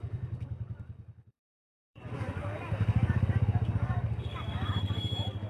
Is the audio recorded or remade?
remade